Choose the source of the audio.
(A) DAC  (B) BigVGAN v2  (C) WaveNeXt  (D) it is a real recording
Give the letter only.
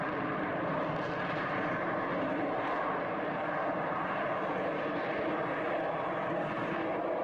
B